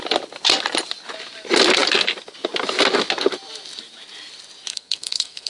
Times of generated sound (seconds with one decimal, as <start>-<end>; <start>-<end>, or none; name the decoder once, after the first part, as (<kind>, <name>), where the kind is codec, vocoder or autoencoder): 4.7-5.5 (codec, SNAC)